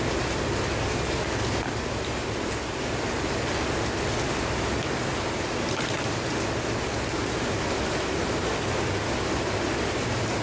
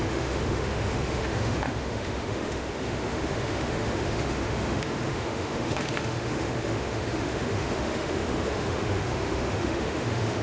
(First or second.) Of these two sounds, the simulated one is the second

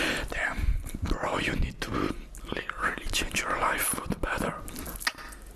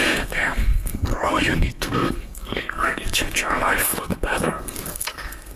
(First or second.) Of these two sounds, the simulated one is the second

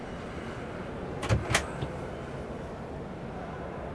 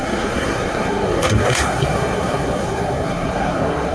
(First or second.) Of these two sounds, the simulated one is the second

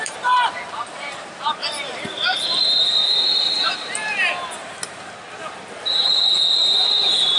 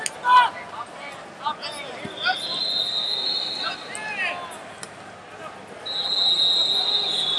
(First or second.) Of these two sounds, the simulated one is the first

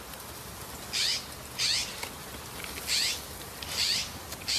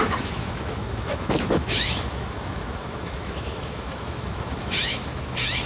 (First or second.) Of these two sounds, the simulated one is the second